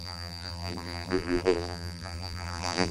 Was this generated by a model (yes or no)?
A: yes